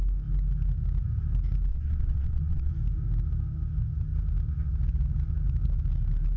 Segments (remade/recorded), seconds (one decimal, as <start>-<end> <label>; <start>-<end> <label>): 0.0-1.7 recorded; 1.7-2.7 remade; 2.7-6.4 recorded